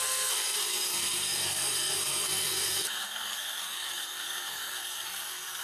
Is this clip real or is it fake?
fake